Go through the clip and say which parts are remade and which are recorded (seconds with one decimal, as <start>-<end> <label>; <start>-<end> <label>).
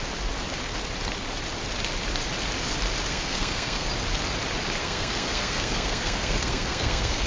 0.0-3.1 recorded; 3.1-3.9 remade; 3.9-4.8 recorded; 4.8-7.3 remade